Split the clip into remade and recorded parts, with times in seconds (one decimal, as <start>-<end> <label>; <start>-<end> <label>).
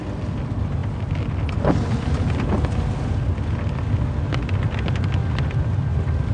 0.0-6.3 recorded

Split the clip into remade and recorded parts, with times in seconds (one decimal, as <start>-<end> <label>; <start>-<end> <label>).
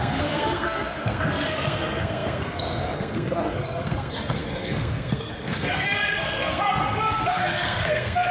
0.0-8.3 remade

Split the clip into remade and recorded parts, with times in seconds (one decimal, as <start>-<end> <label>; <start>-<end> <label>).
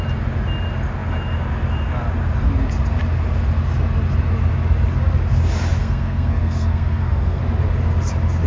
0.0-5.8 recorded; 5.8-7.4 remade; 7.4-8.5 recorded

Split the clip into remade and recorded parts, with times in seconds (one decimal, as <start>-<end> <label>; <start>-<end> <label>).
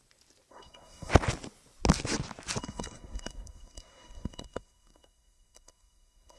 0.0-0.5 recorded; 0.5-1.1 remade; 1.1-2.6 recorded; 2.6-6.4 remade